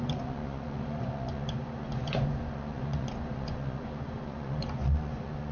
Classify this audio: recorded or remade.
remade